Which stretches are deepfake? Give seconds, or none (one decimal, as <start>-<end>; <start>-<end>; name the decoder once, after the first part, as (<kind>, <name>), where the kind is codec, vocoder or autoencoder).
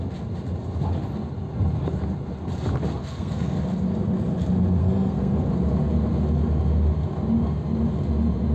3.0-3.6 (codec, SNAC); 4.8-5.5